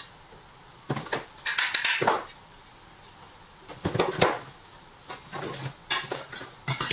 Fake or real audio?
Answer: real